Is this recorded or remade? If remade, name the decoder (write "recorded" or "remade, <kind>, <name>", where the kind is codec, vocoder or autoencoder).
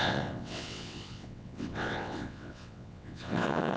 remade, vocoder, WaveNeXt